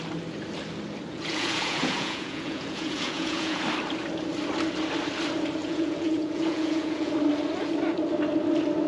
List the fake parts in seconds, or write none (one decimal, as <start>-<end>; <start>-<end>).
1.1-3.6; 5.6-7.1